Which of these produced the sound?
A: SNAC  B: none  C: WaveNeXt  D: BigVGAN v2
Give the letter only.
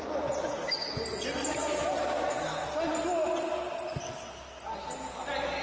B